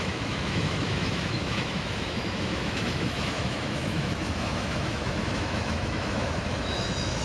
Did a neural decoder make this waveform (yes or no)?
yes